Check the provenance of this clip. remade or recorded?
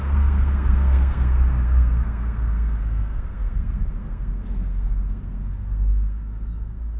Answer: remade